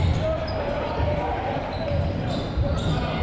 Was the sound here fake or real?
real